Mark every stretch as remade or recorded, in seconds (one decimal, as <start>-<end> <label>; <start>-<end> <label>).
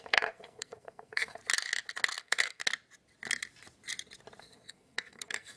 0.0-1.4 remade; 1.4-2.2 recorded; 2.2-2.6 remade; 2.6-4.4 recorded; 4.4-5.6 remade